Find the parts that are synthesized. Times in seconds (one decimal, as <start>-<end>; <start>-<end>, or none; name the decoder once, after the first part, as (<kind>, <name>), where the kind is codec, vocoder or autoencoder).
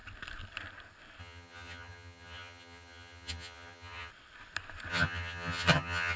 1.2-4.1 (vocoder, HiFi-GAN); 4.9-6.2